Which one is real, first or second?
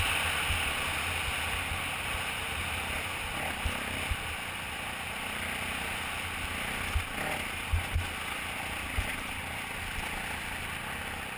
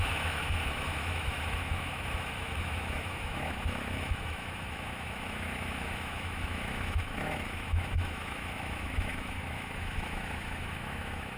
first